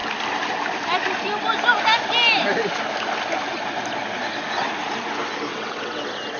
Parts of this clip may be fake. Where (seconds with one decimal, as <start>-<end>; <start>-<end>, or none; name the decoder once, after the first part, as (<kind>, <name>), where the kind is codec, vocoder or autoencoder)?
5.5-6.0 (vocoder, WaveNeXt)